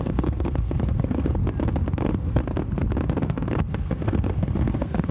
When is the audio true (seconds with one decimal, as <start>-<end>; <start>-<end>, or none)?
1.4-2.0; 2.4-3.5